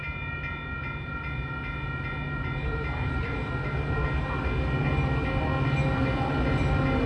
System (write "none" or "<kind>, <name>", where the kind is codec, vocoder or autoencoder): none